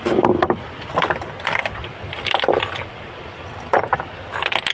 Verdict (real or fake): real